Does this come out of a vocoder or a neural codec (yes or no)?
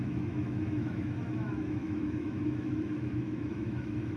yes